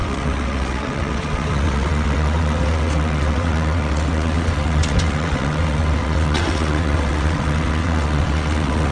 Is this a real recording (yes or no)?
no